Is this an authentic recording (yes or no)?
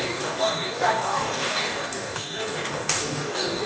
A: no